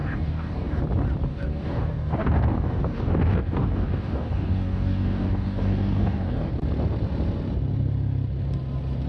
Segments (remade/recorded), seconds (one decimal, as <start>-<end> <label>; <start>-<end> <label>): 0.0-0.8 remade; 0.8-1.3 recorded; 1.3-6.5 remade; 6.5-9.1 recorded